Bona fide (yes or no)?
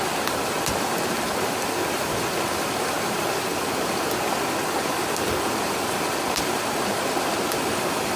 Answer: yes